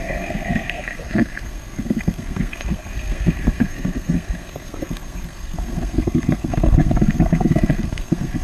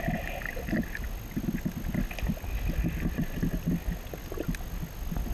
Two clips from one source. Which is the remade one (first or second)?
first